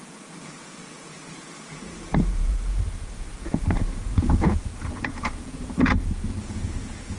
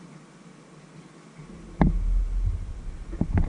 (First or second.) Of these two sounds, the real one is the second